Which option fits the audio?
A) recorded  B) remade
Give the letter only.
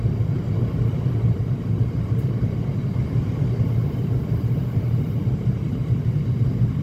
A